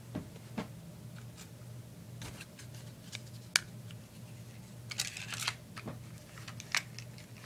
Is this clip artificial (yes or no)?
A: no